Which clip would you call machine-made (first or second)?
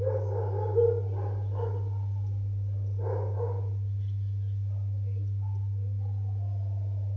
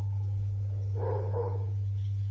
second